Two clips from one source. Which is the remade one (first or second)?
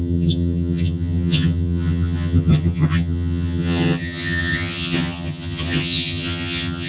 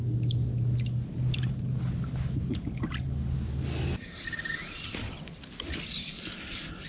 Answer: first